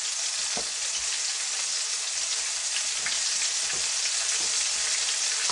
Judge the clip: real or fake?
real